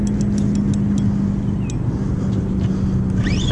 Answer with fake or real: real